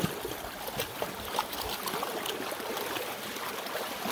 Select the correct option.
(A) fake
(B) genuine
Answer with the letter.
B